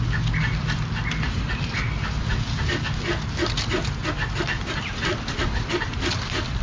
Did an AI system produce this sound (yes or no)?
no